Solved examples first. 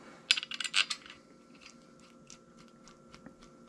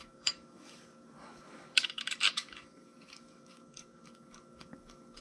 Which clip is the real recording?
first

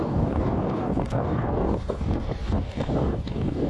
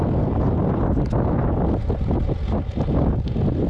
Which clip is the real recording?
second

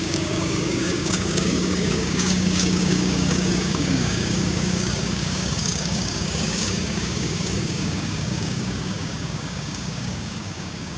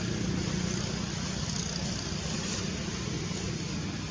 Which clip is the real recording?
second